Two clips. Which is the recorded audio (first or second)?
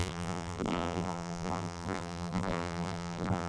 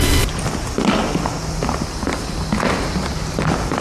second